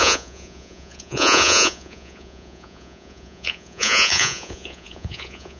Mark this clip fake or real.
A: fake